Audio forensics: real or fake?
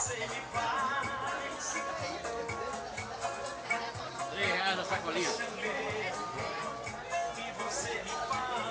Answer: real